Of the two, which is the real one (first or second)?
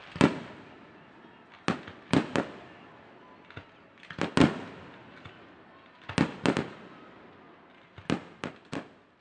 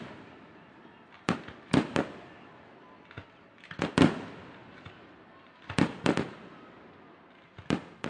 first